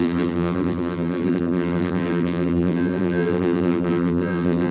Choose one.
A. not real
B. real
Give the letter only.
A